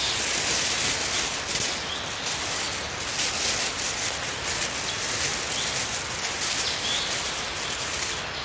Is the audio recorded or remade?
recorded